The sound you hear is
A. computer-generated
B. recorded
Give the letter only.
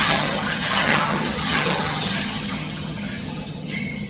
A